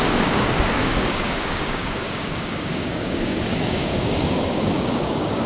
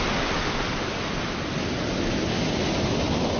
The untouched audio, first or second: second